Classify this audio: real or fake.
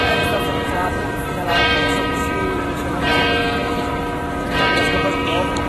fake